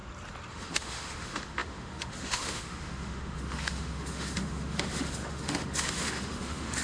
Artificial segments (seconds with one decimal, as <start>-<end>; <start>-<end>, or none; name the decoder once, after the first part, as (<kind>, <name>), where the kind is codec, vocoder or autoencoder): 0.5-6.8 (autoencoder, DAC-VAE)